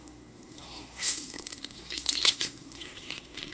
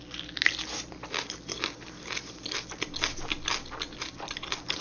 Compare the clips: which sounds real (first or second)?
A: second